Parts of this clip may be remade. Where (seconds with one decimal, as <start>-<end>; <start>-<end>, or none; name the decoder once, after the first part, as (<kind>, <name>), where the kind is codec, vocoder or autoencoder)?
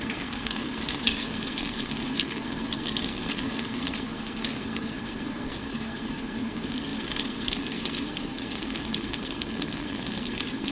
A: 0.0-10.7 (codec, SNAC)